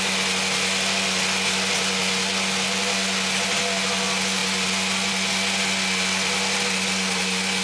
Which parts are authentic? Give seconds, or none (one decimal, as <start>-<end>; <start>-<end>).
0.0-7.6